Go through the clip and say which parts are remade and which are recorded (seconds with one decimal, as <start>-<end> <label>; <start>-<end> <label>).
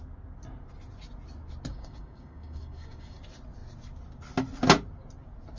0.0-1.7 recorded; 1.7-3.2 remade; 3.2-5.6 recorded